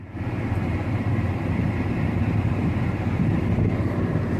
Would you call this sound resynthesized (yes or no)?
yes